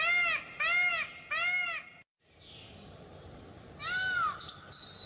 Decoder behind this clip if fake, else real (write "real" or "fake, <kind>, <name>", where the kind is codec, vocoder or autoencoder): real